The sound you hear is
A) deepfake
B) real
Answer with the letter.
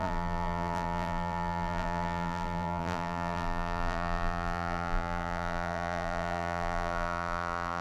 A